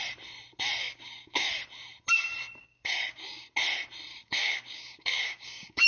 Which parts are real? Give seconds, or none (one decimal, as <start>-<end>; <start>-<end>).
0.0-0.8; 1.5-2.6; 3.5-4.1